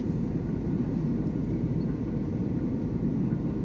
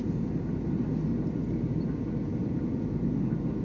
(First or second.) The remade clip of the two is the first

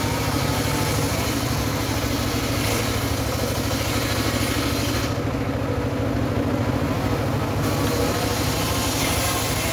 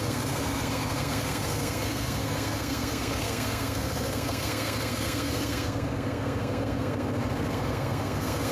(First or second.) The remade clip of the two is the second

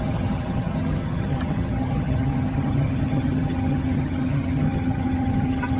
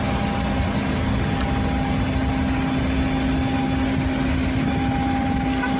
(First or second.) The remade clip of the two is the first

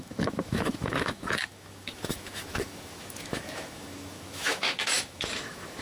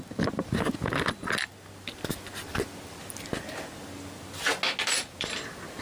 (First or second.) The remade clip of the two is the first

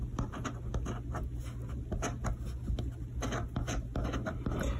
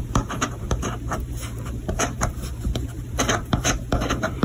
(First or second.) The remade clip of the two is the second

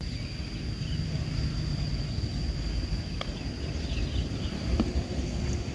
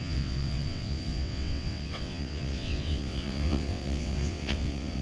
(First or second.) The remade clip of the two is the second